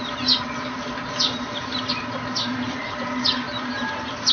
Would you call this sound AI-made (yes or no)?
no